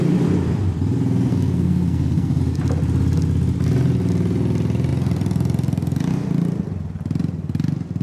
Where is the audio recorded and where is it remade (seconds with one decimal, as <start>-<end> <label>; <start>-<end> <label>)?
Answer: 0.0-1.3 recorded; 1.3-2.4 remade; 2.4-8.0 recorded